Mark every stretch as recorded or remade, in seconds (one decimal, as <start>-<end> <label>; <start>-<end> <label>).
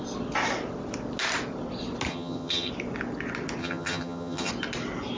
0.0-2.1 recorded; 2.1-2.7 remade; 2.7-3.6 recorded; 3.6-4.5 remade; 4.5-5.2 recorded